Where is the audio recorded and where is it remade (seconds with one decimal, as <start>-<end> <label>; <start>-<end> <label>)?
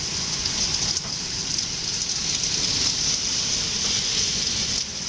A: 0.0-0.7 remade; 0.7-3.8 recorded; 3.8-5.1 remade